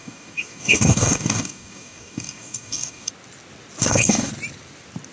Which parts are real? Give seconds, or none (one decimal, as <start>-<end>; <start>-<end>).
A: 3.1-3.8; 4.3-5.1